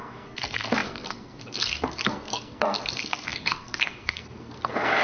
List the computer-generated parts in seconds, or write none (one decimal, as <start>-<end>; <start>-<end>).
0.0-5.0